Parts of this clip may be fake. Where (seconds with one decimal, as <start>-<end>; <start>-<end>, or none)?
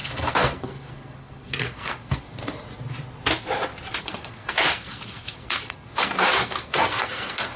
0.0-2.4; 4.0-7.6